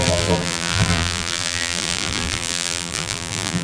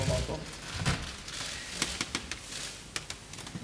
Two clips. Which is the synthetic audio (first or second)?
first